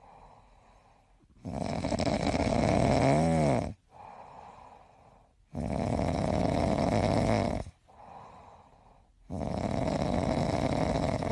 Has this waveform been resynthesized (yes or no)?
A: no